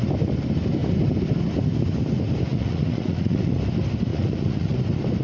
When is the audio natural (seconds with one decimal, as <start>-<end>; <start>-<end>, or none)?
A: 0.0-2.5; 3.6-4.1; 4.8-5.2

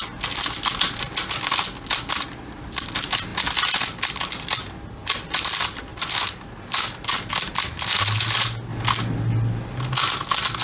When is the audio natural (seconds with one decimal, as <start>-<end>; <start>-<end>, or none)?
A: 0.0-10.6

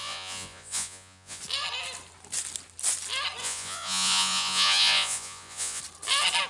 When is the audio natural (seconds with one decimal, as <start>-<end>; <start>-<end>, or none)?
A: 1.4-3.4; 5.8-6.5

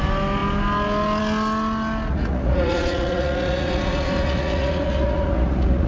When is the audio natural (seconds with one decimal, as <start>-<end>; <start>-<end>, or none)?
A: 0.0-2.1

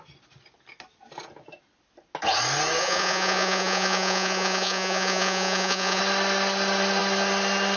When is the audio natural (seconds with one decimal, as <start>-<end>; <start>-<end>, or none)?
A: 0.0-2.8; 6.0-7.8